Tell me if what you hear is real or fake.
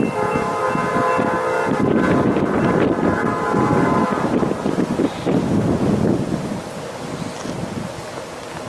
real